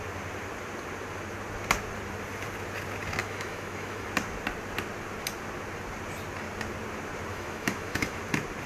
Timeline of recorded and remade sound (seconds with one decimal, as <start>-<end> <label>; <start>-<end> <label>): 0.0-3.2 recorded; 3.2-4.1 remade; 4.1-7.3 recorded; 7.3-8.2 remade; 8.2-8.7 recorded